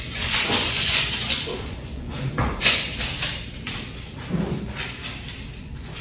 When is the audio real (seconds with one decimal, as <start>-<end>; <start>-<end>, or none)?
2.9-4.3; 5.0-5.6